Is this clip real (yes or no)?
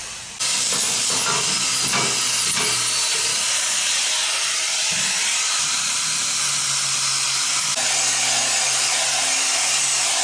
yes